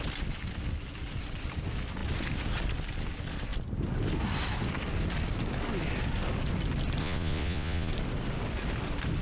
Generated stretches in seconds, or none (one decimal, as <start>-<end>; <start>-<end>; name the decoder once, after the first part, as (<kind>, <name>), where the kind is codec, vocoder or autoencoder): 7.0-7.9 (vocoder, Vocos)